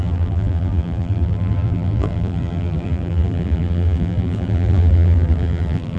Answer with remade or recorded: remade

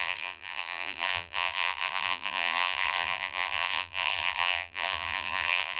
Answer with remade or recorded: remade